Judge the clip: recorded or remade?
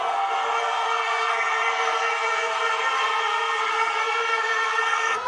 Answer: remade